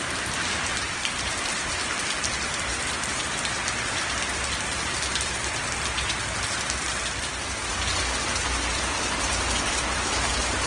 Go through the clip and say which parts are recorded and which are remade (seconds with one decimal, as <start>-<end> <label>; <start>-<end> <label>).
0.0-7.7 remade; 7.7-8.2 recorded; 8.2-10.7 remade